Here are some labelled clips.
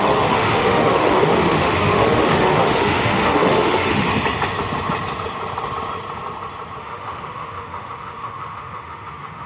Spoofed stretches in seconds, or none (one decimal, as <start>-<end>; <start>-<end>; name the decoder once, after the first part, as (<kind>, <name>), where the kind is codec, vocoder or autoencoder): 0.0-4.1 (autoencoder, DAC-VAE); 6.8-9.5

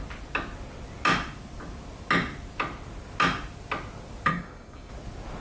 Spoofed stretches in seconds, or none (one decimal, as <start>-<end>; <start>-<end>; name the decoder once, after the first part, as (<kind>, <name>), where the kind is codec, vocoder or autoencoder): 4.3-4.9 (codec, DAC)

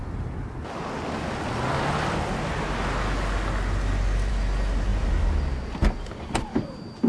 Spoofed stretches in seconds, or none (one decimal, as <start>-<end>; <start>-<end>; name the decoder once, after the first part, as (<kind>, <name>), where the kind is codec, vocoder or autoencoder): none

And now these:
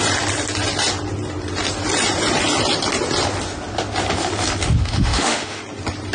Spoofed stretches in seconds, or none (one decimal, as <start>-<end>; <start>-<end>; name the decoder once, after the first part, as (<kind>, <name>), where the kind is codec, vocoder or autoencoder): 4.8-5.6 (autoencoder, DAC-VAE)

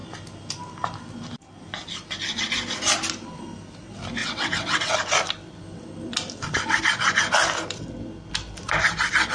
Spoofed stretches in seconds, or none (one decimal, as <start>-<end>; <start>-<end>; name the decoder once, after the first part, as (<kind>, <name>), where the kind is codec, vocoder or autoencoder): 4.2-4.9 (vocoder, WaveNeXt)

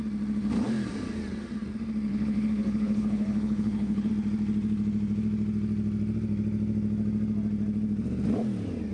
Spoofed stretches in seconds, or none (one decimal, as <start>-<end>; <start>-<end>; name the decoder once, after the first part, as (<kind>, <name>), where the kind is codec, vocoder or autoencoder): 2.1-4.1 (codec, HILCodec)

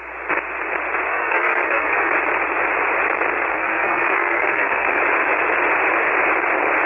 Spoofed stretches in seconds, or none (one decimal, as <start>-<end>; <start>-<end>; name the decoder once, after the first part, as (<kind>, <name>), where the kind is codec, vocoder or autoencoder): 1.1-2.1 (codec, SNAC); 3.5-5.0